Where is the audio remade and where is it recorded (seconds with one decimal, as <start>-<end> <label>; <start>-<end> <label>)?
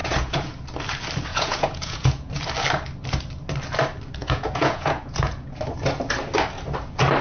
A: 0.0-0.5 remade; 0.5-1.3 recorded; 1.3-2.3 remade; 2.3-4.2 recorded; 4.2-5.6 remade; 5.6-7.2 recorded